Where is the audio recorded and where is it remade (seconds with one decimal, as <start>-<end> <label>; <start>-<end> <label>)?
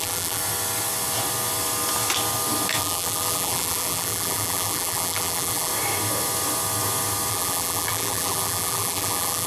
0.0-0.4 remade; 0.4-2.8 recorded; 2.8-5.7 remade; 5.7-7.3 recorded; 7.3-9.5 remade